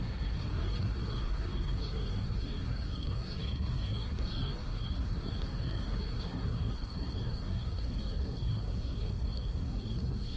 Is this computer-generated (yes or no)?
yes